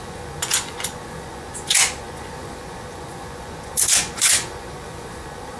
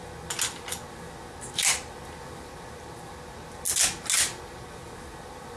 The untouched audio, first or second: second